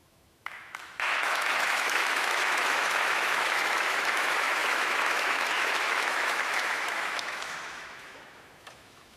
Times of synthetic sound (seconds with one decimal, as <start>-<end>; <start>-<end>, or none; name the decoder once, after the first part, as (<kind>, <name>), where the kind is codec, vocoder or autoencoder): 0.0-9.2 (autoencoder, DAC-VAE)